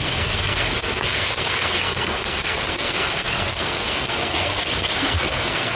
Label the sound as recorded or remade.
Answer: remade